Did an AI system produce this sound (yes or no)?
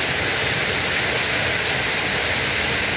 no